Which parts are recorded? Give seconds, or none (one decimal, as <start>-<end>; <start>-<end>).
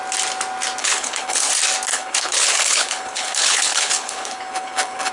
0.0-0.8; 1.5-1.9